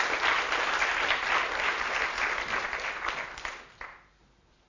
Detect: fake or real real